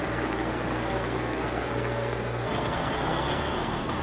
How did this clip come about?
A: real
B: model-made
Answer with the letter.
B